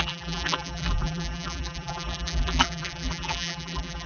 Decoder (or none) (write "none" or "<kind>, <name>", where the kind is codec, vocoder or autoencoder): vocoder, BigVGAN v2